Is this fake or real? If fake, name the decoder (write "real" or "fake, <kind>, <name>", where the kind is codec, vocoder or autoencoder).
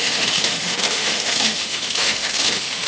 fake, autoencoder, DAC-VAE